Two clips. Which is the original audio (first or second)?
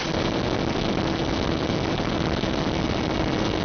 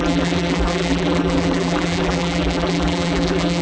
first